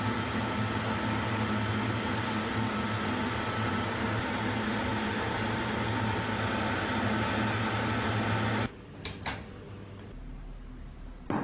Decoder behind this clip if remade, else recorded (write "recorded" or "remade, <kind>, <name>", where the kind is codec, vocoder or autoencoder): recorded